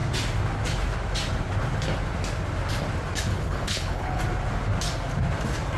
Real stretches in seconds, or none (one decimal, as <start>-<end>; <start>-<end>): 0.0-3.3; 4.2-5.8